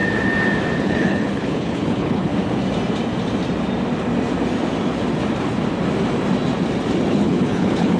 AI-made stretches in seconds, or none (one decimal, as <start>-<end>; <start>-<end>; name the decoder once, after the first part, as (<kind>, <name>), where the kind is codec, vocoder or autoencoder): 0.8-2.3 (codec, HILCodec); 7.1-8.0